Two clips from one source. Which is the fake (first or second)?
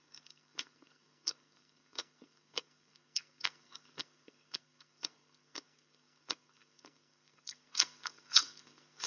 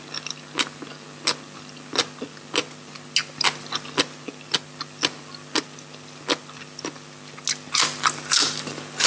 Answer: first